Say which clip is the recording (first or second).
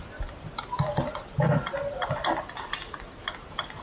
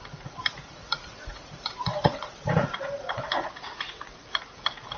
first